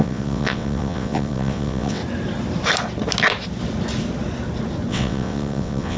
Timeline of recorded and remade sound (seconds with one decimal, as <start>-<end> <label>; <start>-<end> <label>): 0.0-2.0 remade; 2.0-4.9 recorded; 4.9-6.0 remade